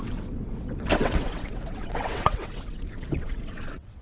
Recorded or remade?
remade